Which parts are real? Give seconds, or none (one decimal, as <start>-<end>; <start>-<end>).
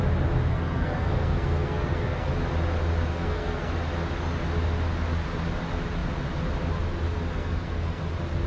0.0-0.5; 2.3-3.1; 3.7-7.3; 8.0-8.5